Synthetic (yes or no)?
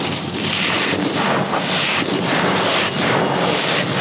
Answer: no